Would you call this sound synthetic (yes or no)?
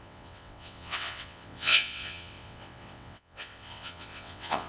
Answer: yes